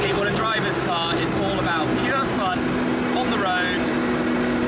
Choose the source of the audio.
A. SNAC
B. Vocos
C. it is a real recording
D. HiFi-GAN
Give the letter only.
C